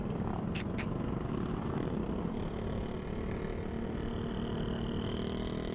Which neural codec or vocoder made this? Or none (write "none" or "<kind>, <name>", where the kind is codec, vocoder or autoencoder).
none